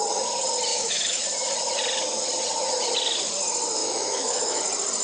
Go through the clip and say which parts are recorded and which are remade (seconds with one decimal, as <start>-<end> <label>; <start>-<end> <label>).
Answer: 0.0-0.7 recorded; 0.7-1.2 remade; 1.2-3.8 recorded; 3.8-4.6 remade; 4.6-5.0 recorded